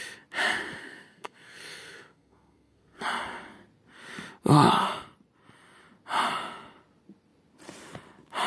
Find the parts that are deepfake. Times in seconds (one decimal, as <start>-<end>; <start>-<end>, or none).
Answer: 0.8-3.0